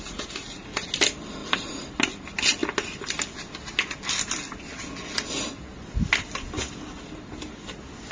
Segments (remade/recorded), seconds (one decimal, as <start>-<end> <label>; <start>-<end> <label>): 0.0-1.4 recorded; 1.4-1.9 remade; 1.9-8.1 recorded